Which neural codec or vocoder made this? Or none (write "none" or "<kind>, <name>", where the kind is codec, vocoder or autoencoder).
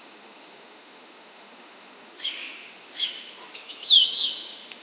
autoencoder, DAC-VAE